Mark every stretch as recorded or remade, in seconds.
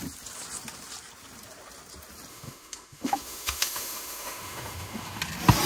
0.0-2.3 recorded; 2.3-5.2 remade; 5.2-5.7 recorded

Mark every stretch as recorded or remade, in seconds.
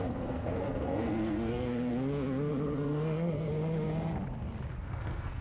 0.0-1.9 remade; 1.9-2.5 recorded; 2.5-3.5 remade; 3.5-4.7 recorded; 4.7-5.4 remade